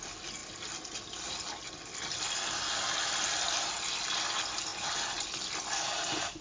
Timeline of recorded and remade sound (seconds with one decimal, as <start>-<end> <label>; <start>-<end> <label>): 0.0-6.4 recorded